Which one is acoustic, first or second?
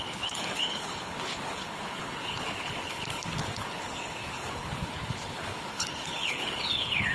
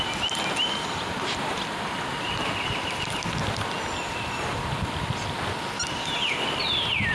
second